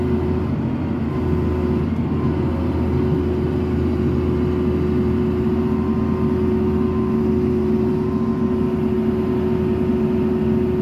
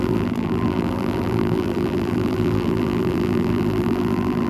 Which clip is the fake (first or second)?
second